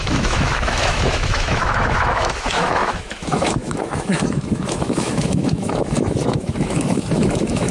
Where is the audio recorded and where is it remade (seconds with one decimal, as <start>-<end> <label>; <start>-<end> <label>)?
0.0-7.7 remade